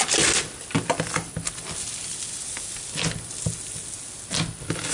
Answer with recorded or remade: recorded